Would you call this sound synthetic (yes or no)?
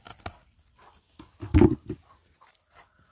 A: no